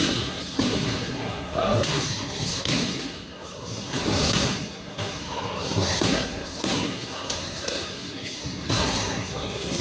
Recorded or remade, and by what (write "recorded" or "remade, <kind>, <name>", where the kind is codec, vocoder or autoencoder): remade, codec, SNAC